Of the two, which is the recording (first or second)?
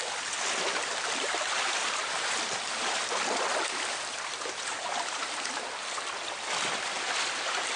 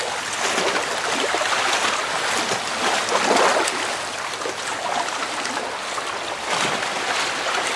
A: second